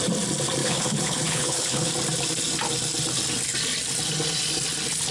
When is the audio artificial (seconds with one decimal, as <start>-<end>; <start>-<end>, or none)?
0.6-1.9